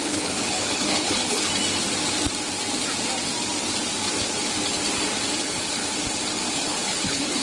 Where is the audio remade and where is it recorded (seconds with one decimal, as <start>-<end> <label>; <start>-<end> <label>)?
0.0-1.5 remade; 1.5-5.4 recorded; 5.4-5.9 remade; 5.9-6.5 recorded; 6.5-7.4 remade